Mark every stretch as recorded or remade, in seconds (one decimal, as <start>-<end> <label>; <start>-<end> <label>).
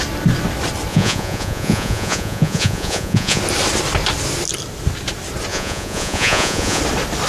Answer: 0.0-0.9 recorded; 0.9-3.4 remade; 3.4-5.5 recorded; 5.5-6.8 remade; 6.8-7.3 recorded